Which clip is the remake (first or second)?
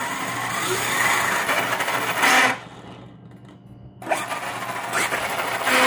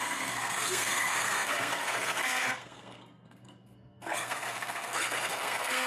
second